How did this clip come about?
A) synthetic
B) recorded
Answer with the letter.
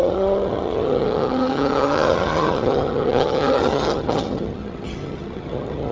A